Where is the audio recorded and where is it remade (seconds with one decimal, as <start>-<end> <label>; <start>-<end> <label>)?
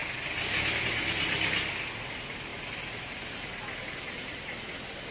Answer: 0.0-5.1 recorded